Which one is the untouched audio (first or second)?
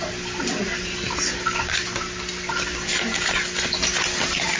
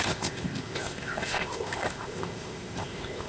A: first